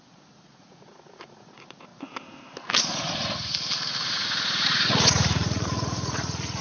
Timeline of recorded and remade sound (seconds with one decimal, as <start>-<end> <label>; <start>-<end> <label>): 0.0-1.9 remade; 1.9-2.8 recorded; 2.8-3.5 remade; 3.5-4.0 recorded; 4.0-6.6 remade